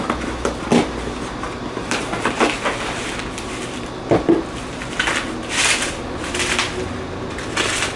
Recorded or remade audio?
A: recorded